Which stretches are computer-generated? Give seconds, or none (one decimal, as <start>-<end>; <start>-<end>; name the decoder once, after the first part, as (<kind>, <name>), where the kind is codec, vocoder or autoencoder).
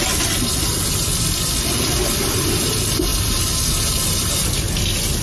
none